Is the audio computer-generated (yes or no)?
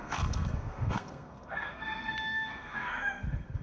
yes